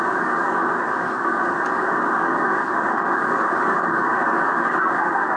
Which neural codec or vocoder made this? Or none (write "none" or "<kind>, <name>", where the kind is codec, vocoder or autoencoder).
codec, DAC